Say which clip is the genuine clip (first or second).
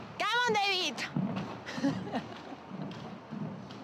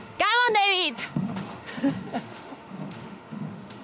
first